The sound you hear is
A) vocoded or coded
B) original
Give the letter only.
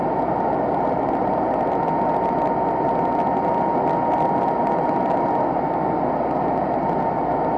B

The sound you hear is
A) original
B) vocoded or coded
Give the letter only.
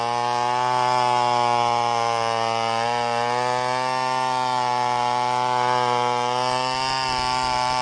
A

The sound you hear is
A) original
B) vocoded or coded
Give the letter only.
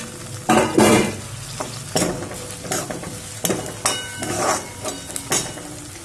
A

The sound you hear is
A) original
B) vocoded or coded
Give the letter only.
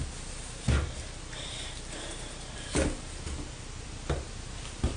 A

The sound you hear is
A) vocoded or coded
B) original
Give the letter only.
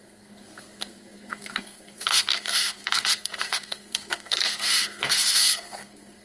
A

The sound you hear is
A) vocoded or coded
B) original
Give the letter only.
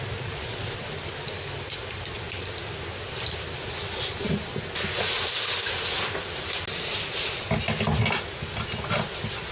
B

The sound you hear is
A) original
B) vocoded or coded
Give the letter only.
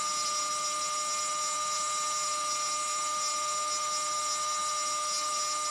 A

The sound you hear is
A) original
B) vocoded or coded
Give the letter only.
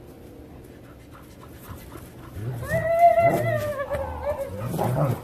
A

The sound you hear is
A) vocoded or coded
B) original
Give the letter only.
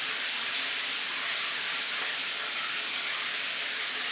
B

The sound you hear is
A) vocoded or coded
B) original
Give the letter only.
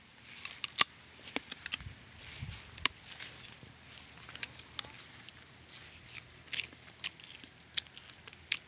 B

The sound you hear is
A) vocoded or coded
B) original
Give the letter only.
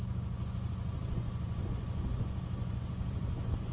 A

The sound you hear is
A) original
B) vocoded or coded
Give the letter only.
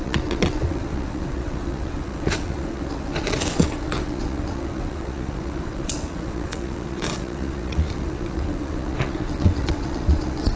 B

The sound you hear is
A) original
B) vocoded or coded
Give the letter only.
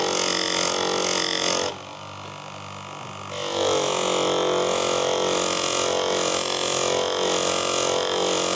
A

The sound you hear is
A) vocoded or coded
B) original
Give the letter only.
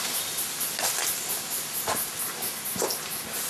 B